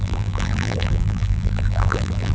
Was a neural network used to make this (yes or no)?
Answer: yes